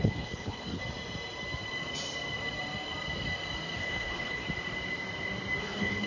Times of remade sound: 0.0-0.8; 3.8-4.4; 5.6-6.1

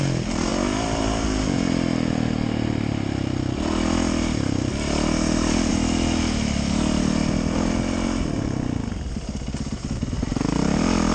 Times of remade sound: none

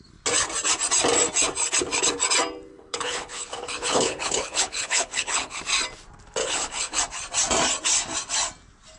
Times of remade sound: 2.7-5.6; 6.4-7.0

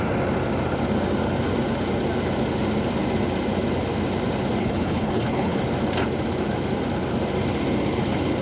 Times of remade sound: 4.6-5.6

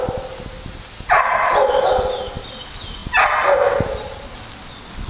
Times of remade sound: none

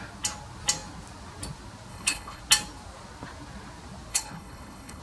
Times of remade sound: 1.9-2.4; 4.1-5.0

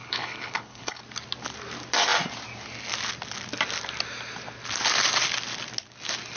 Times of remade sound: 0.0-1.0